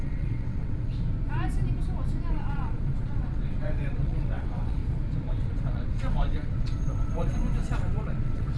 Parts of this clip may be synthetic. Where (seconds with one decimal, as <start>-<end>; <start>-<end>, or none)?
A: 0.0-0.9; 2.3-4.8; 5.3-8.6